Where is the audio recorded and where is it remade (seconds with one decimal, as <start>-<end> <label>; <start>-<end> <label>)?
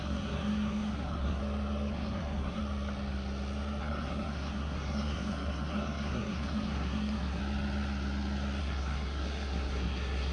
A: 0.0-1.4 remade; 1.4-1.9 recorded; 1.9-2.6 remade; 2.6-3.8 recorded; 3.8-7.4 remade; 7.4-8.6 recorded; 8.6-10.3 remade